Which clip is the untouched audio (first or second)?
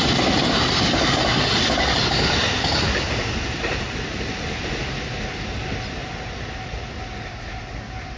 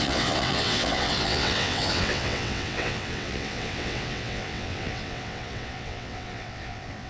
first